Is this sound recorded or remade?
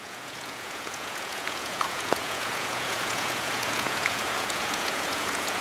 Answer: remade